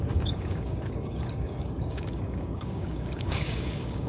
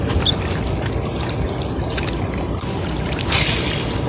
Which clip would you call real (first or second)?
second